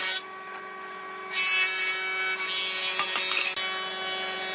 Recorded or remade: recorded